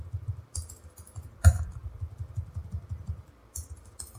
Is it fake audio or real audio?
real